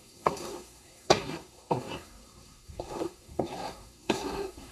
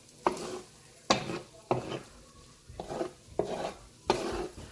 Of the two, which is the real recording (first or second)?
second